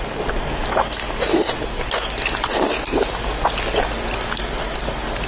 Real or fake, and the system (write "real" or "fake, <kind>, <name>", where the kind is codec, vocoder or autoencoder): real